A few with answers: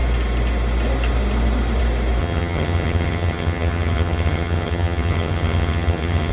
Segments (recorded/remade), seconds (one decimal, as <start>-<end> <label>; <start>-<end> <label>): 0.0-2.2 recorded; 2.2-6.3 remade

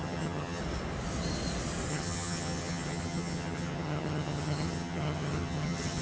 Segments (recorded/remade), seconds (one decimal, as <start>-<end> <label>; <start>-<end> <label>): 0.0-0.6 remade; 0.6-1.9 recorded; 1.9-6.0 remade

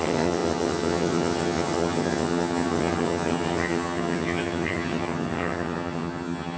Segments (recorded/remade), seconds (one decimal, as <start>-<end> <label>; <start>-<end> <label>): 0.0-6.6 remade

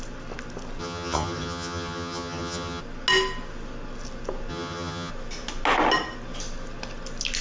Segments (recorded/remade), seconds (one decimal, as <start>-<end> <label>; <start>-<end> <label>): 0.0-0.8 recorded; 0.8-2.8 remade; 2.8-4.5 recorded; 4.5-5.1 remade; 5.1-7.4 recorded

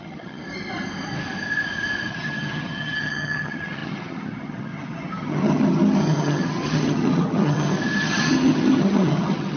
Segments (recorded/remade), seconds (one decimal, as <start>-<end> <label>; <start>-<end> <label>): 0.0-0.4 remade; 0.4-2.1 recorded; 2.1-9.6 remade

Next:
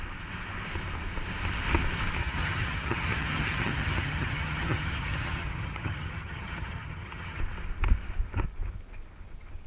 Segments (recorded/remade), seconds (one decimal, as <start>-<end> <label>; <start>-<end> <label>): 0.0-2.2 recorded; 2.2-7.4 remade; 7.4-9.7 recorded

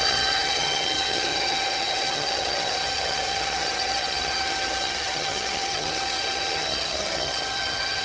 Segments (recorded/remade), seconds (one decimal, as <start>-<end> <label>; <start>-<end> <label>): 0.0-8.0 remade

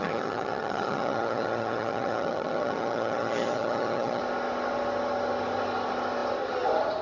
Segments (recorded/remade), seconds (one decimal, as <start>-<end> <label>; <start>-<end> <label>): 0.0-4.2 remade; 4.2-7.0 recorded